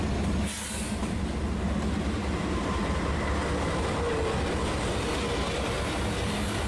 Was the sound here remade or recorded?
recorded